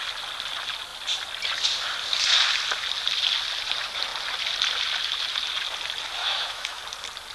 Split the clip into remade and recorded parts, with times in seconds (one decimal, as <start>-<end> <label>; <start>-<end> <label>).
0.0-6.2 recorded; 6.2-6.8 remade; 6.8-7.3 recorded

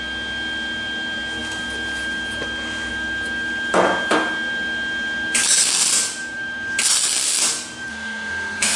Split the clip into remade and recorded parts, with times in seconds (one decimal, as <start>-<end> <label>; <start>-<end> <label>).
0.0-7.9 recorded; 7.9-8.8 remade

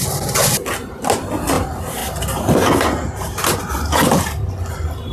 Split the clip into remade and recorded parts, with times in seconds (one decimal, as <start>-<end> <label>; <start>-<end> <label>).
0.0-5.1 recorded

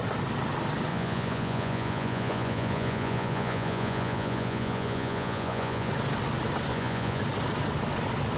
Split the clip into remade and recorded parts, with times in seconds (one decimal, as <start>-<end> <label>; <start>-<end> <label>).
0.0-0.9 recorded; 0.9-5.9 remade; 5.9-6.7 recorded; 6.7-7.2 remade; 7.2-8.4 recorded